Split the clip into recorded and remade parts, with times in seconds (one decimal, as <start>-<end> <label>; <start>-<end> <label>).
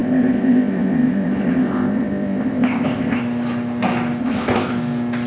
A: 0.0-3.2 remade; 3.2-4.2 recorded; 4.2-4.7 remade; 4.7-5.3 recorded